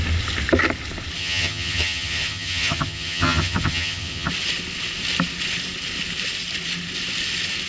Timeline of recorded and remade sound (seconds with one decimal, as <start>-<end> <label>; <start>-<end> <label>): 0.0-1.2 recorded; 1.2-4.3 remade; 4.3-7.7 recorded